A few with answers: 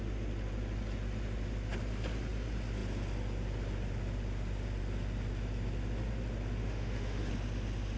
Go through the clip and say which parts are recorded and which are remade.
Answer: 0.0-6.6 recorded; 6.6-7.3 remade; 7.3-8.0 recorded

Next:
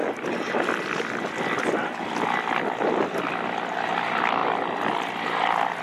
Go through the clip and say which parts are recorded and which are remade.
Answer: 0.0-5.8 recorded